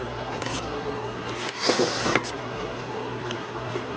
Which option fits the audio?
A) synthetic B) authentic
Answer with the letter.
A